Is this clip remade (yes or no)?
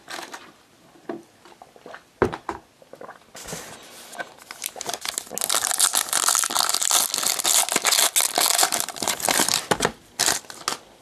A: no